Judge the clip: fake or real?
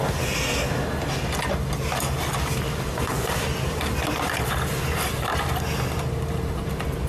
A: real